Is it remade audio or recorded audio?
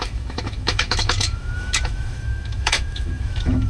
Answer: remade